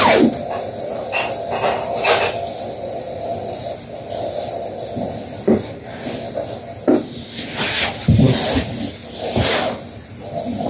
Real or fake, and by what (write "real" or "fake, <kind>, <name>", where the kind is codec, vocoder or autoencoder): real